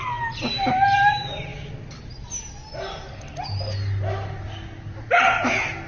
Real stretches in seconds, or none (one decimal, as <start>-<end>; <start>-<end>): 0.0-5.9